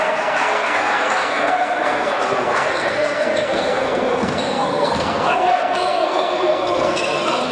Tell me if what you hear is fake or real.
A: fake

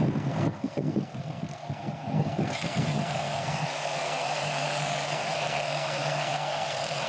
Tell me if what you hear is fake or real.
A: fake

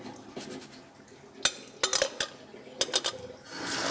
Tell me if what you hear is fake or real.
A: real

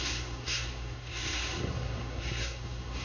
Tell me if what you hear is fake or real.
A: fake